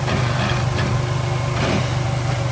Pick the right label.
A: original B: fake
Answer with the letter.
A